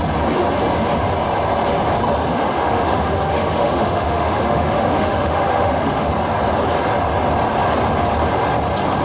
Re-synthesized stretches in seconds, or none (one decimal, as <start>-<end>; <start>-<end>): 2.3-6.1